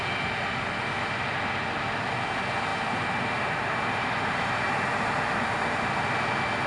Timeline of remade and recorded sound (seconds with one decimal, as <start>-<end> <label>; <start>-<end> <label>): 0.0-2.7 recorded; 2.7-5.9 remade; 5.9-6.7 recorded